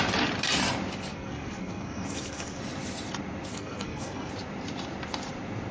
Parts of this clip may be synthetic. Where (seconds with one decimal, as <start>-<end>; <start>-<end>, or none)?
1.1-2.6; 3.5-4.3